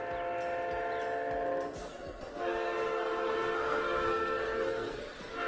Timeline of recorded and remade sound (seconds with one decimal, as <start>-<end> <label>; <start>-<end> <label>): 0.0-1.8 recorded; 1.8-5.0 remade; 5.0-5.5 recorded